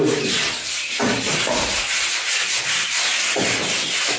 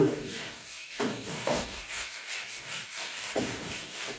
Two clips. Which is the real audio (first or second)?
first